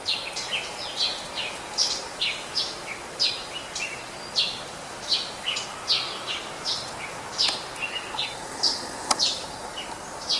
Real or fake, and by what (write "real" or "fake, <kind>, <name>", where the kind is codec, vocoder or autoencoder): real